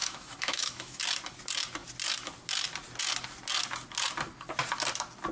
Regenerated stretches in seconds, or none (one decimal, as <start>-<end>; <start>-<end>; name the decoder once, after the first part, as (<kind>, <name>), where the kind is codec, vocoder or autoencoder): 0.0-1.0 (autoencoder, DAC-VAE)

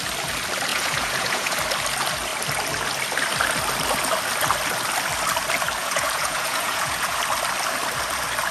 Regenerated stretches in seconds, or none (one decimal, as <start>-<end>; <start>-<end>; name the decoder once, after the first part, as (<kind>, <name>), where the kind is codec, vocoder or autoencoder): 0.7-1.6 (vocoder, Vocos); 5.8-7.2

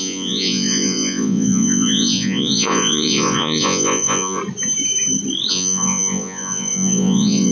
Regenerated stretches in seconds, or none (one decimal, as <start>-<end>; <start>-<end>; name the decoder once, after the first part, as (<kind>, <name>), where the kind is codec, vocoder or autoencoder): 0.0-4.4 (vocoder, Vocos); 5.5-7.5

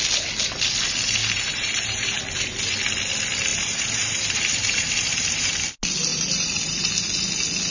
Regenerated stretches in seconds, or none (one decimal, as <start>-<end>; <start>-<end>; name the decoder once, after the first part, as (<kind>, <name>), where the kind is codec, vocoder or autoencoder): 1.2-2.2 (vocoder, BigVGAN v2); 3.5-5.5; 6.1-6.9

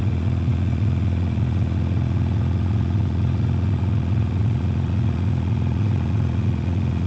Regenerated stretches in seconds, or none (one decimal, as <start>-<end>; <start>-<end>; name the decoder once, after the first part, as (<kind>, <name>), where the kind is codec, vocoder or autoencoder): 0.0-7.1 (vocoder, Vocos)

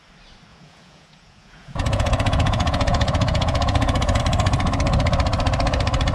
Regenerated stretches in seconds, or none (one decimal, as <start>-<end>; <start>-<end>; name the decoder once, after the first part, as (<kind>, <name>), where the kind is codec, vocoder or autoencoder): 0.5-4.2 (vocoder, Vocos)